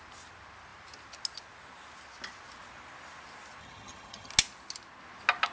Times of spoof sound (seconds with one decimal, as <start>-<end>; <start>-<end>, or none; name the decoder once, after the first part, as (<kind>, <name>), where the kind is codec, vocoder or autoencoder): 3.6-4.3 (vocoder, HiFi-GAN)